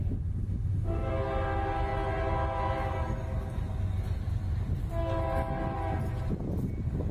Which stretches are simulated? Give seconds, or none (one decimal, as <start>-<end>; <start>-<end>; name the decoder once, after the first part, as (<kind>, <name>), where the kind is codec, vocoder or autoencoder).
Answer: 0.0-1.1 (autoencoder, DAC-VAE)